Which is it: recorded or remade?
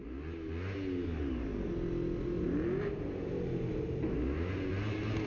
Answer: recorded